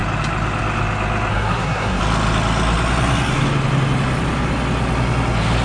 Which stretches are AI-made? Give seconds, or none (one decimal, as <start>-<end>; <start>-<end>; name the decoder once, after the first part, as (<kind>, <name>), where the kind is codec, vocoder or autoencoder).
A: 1.3-2.0 (codec, SNAC)